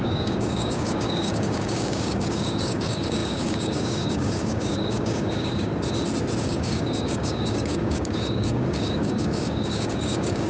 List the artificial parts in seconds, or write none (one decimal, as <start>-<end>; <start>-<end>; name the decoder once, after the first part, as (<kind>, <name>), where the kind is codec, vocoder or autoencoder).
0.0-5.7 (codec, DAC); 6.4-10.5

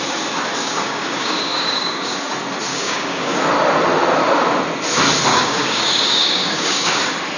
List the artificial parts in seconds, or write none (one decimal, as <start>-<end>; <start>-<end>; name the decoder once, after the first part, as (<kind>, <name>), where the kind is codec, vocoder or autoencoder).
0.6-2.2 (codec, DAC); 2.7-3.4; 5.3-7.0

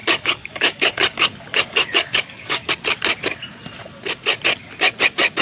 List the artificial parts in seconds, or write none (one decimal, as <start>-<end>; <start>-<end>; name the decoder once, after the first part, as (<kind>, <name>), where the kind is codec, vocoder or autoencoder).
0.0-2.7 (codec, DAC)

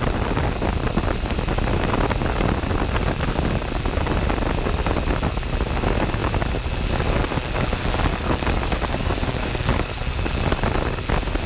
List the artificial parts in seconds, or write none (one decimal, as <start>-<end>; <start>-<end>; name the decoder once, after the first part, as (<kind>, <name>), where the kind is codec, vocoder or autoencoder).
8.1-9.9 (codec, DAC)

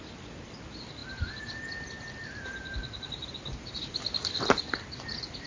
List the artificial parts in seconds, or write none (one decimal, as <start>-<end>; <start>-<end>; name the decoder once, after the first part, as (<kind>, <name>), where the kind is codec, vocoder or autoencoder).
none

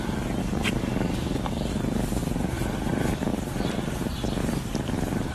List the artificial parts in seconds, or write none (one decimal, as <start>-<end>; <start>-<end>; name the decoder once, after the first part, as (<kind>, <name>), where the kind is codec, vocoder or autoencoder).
0.4-1.7 (codec, DAC)